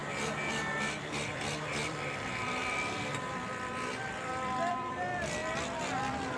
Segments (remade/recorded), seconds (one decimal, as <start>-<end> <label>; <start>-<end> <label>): 0.0-0.5 recorded; 0.5-5.4 remade; 5.4-6.0 recorded; 6.0-6.4 remade